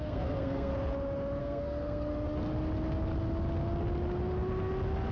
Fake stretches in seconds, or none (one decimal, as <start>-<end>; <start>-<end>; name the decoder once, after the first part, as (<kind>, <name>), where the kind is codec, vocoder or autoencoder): 0.0-0.7 (codec, SNAC); 1.4-2.1